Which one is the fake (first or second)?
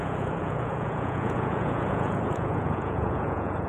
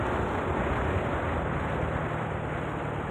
first